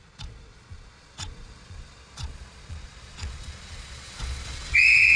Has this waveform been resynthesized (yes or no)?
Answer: yes